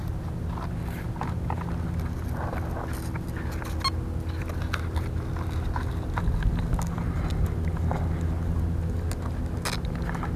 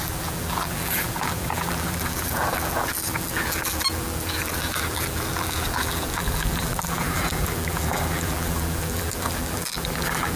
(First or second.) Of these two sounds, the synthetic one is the second